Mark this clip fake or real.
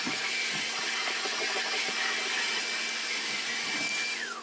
real